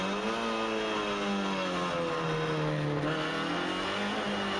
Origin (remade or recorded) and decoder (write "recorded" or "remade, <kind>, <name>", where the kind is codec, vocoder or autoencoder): recorded